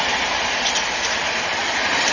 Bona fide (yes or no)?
yes